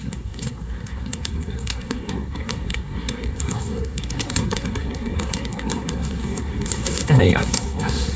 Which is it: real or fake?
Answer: fake